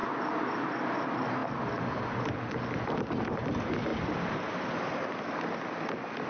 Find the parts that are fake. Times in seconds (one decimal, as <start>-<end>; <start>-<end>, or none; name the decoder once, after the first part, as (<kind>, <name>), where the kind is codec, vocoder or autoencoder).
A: none